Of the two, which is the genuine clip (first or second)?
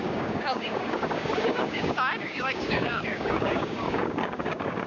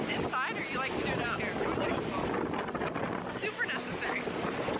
second